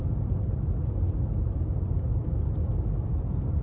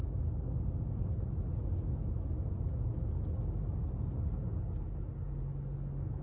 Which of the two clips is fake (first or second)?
first